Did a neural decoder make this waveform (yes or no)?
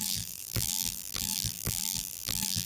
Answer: yes